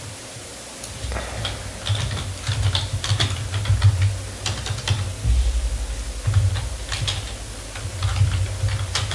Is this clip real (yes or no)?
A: yes